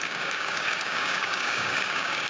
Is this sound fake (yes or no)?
yes